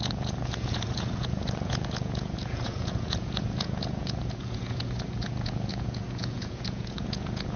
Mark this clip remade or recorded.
remade